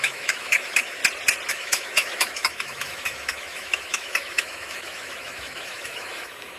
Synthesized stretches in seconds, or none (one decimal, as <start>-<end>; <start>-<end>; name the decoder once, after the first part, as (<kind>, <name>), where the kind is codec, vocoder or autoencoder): 0.0-1.0 (autoencoder, DAC-VAE); 1.5-6.6